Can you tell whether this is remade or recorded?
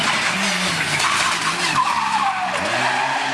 recorded